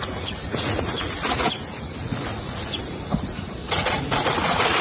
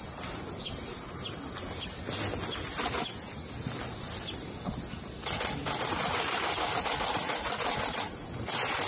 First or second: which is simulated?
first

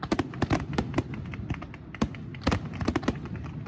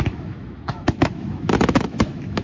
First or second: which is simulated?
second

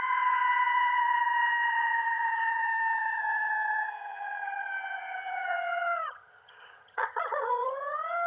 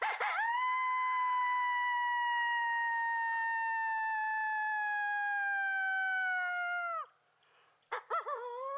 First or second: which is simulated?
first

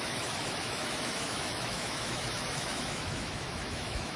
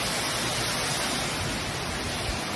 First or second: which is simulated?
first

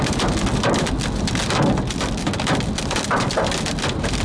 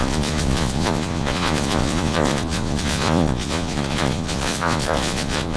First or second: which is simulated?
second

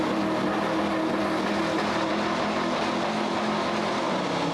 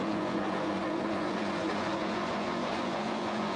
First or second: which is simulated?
second